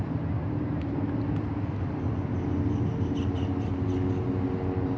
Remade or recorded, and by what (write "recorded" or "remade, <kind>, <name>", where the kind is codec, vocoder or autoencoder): recorded